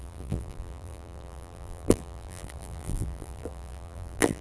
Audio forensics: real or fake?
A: fake